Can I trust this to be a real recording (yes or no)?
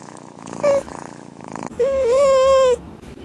no